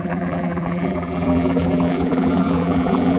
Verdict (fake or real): fake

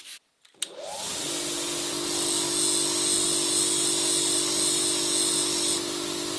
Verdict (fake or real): real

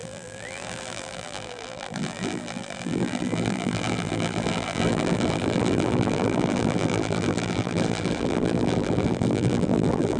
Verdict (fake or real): fake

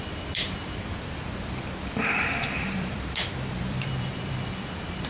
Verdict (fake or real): fake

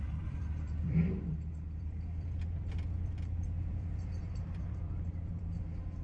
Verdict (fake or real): fake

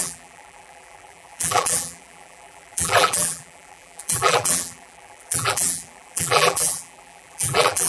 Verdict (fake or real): fake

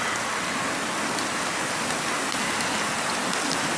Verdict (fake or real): real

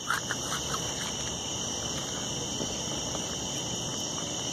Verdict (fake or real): fake